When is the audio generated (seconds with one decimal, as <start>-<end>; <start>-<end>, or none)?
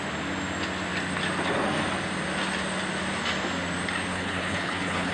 4.1-5.1